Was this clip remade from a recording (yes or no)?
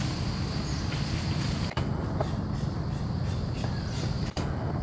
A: no